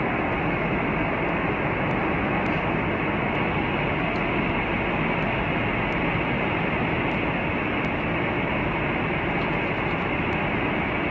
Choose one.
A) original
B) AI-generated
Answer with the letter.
A